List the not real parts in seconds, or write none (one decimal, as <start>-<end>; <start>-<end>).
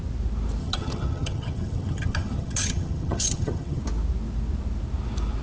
0.6-3.8